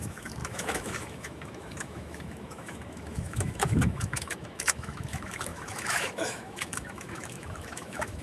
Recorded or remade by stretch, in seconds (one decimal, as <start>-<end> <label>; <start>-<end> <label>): 0.0-8.2 remade